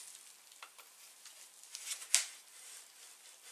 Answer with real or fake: real